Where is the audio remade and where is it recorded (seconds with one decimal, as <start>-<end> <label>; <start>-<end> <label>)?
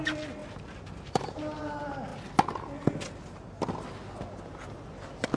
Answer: 0.0-5.4 recorded